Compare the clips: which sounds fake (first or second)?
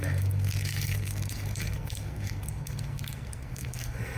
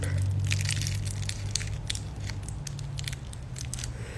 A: first